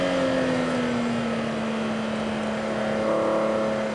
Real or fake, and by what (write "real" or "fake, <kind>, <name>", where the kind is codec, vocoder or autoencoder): real